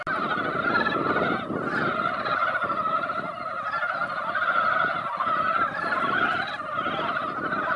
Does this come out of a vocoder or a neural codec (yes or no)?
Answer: no